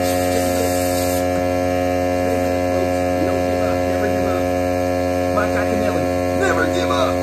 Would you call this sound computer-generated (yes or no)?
no